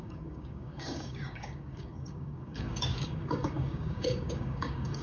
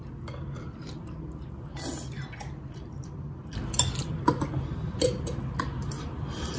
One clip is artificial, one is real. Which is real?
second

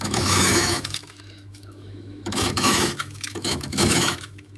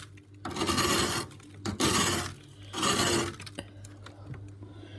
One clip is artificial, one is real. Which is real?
second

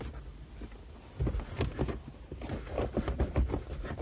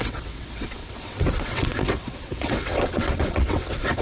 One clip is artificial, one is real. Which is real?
first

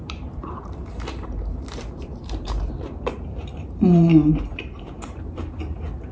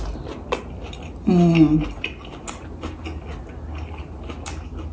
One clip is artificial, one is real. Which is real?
second